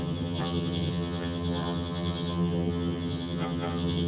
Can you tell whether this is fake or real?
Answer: fake